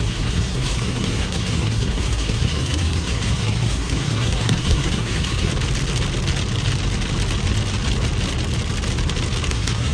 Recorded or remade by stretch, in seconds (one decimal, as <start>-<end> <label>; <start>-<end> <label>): 0.0-5.5 remade; 5.5-9.5 recorded; 9.5-9.9 remade